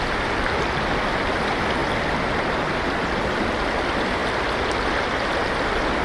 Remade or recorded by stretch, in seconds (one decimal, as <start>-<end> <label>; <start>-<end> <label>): 0.0-6.0 recorded